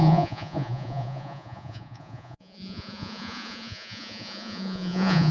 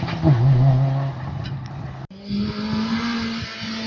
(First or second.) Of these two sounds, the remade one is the first